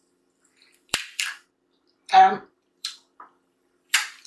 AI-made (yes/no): yes